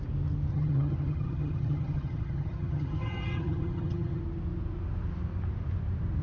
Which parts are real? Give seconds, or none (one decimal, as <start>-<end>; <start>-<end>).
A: 0.0-0.5; 4.2-6.2

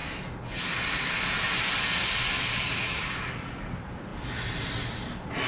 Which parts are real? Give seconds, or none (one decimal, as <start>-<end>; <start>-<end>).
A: 0.0-5.5

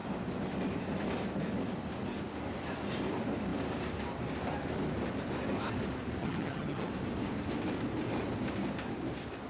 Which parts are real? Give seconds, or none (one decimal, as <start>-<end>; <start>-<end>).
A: 0.0-6.2; 6.9-9.5

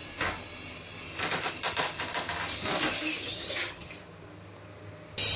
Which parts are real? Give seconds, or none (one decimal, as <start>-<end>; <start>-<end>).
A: 0.0-3.2; 3.9-5.4

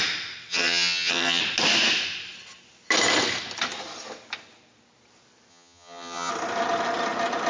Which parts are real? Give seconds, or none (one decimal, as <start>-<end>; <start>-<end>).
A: 0.0-0.5; 1.4-5.5; 6.3-7.5

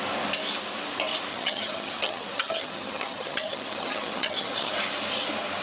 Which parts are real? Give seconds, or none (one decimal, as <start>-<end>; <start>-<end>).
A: 0.0-1.3; 4.7-5.6